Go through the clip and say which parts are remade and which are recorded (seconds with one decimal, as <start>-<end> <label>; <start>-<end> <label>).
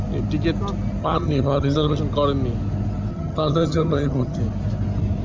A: 0.0-1.0 recorded; 1.0-2.0 remade; 2.0-3.1 recorded; 3.1-4.4 remade; 4.4-5.2 recorded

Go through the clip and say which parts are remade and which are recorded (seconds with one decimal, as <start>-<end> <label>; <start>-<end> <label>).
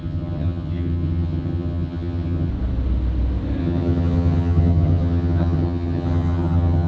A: 0.0-2.5 remade; 2.5-3.6 recorded; 3.6-6.9 remade